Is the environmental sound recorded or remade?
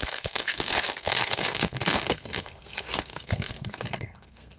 remade